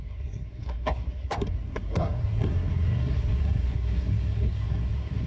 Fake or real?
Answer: fake